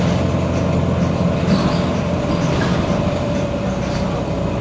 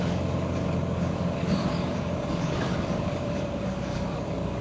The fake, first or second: second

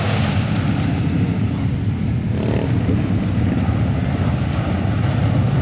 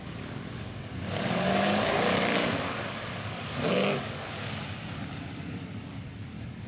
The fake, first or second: second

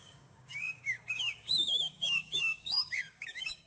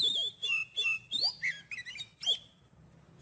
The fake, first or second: first